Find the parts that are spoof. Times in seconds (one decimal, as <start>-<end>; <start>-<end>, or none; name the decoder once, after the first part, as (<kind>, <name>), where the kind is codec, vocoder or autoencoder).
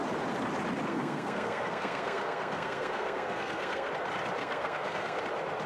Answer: 0.9-3.9 (codec, SNAC); 4.4-5.2